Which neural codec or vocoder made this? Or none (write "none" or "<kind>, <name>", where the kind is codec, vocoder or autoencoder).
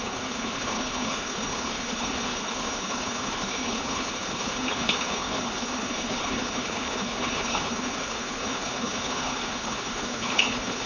codec, HILCodec